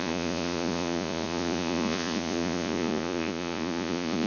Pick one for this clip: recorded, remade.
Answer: remade